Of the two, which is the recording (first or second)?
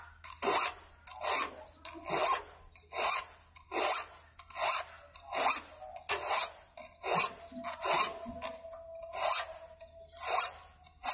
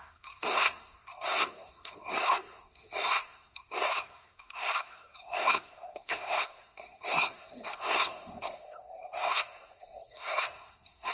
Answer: first